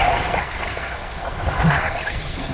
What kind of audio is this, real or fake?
fake